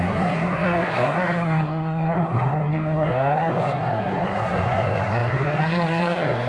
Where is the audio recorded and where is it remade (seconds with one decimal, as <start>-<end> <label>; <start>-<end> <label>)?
0.0-6.5 remade